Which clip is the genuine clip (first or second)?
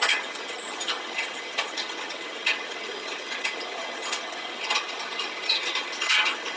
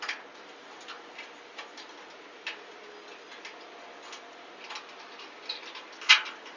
second